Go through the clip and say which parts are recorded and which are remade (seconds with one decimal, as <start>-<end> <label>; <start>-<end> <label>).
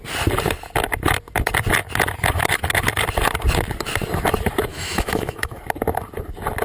0.0-4.7 recorded; 4.7-5.6 remade; 5.6-6.6 recorded